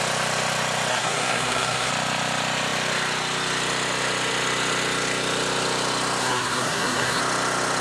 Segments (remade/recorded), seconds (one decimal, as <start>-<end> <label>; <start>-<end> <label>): 0.0-0.9 recorded; 0.9-1.9 remade; 1.9-6.2 recorded; 6.2-7.2 remade; 7.2-7.8 recorded